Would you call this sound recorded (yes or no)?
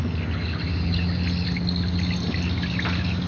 yes